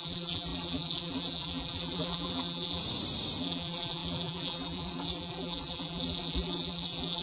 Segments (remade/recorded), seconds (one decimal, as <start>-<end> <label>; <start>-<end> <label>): 0.0-2.8 remade; 2.8-3.4 recorded; 3.4-7.2 remade